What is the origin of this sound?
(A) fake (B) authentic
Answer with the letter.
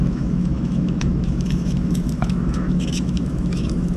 A